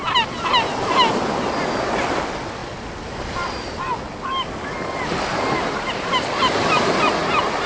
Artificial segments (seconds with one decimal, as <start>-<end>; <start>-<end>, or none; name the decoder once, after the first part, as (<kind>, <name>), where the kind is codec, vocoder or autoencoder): none